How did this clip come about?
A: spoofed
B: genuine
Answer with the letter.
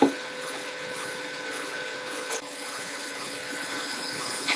A